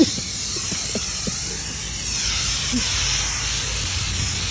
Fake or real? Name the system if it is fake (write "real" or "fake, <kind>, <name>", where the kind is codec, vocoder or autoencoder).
real